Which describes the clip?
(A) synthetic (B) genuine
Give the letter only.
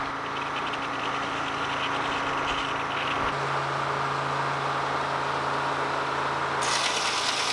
B